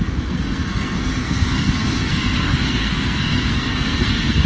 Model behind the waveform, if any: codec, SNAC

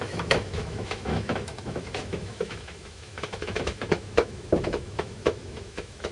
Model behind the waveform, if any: autoencoder, DAC-VAE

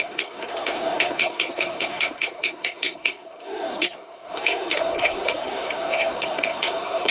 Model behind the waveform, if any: codec, SNAC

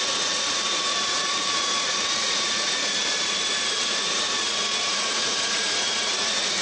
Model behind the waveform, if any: vocoder, Vocos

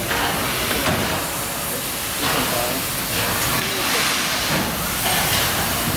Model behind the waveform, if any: none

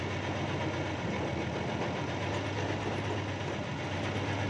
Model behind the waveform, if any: none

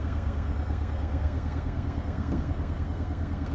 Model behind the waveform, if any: codec, SNAC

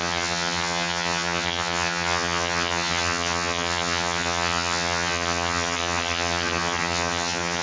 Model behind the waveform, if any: vocoder, HiFi-GAN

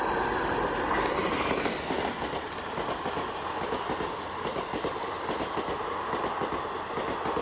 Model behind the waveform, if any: none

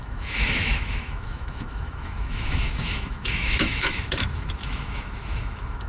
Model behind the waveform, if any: autoencoder, DAC-VAE